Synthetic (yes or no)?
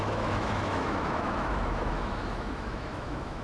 yes